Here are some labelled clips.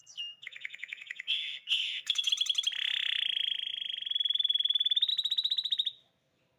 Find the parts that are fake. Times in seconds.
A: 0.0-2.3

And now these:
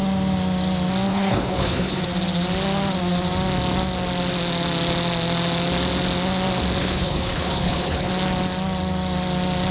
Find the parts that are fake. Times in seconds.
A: 1.1-2.0; 6.8-8.1

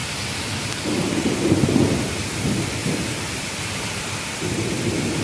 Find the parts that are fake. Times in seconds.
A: 0.0-2.1; 2.8-4.5

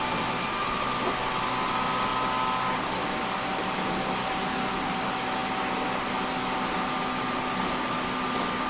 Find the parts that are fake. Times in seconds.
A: 0.6-1.2